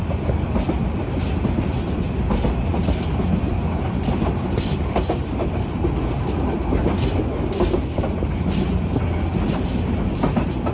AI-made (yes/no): no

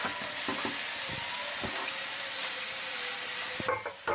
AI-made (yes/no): no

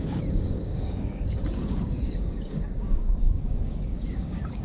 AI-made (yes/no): yes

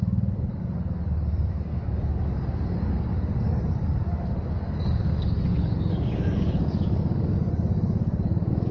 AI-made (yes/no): yes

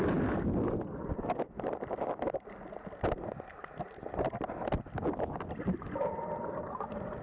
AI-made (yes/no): no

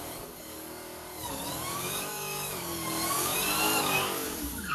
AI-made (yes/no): yes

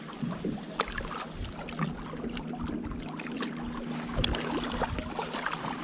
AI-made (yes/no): no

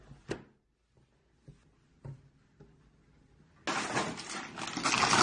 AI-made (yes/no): no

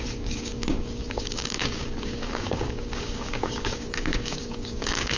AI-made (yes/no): yes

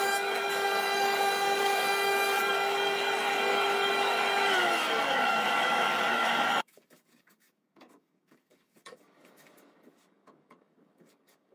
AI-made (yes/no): yes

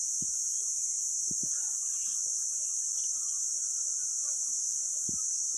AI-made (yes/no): no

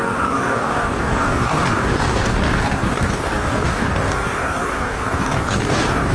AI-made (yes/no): yes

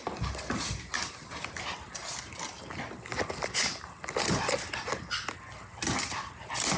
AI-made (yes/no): no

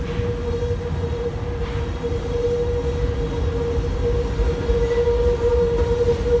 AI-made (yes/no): no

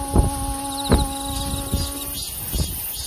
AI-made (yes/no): no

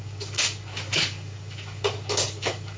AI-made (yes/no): yes